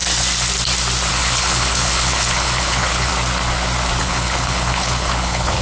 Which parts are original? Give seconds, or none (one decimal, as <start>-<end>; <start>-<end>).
0.0-1.1; 3.1-4.0